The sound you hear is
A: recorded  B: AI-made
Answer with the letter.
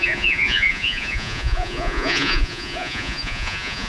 B